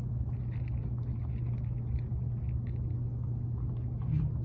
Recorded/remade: recorded